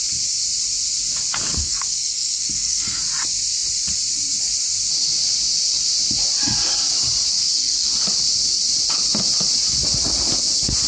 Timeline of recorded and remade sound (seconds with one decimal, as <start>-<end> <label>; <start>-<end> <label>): 0.0-1.6 recorded; 1.6-3.0 remade; 3.0-7.4 recorded; 7.4-7.9 remade; 7.9-10.9 recorded